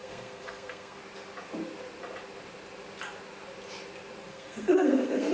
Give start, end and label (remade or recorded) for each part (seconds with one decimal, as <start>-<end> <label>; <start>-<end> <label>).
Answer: 0.0-1.0 remade; 1.0-4.3 recorded; 4.3-5.3 remade